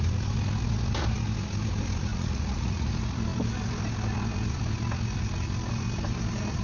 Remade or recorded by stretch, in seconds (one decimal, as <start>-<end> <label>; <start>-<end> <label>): 0.0-2.1 recorded; 2.1-2.9 remade; 2.9-6.6 recorded